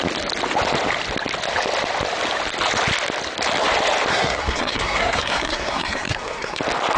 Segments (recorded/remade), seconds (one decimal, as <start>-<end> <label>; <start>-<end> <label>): 0.0-4.1 recorded; 4.1-6.6 remade; 6.6-7.0 recorded